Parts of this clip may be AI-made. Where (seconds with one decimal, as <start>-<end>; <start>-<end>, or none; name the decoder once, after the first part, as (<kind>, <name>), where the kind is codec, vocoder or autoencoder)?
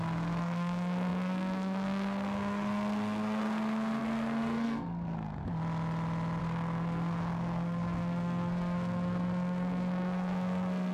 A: 0.0-5.4 (codec, SNAC); 6.4-10.9